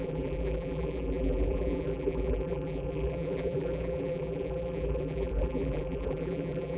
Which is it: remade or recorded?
remade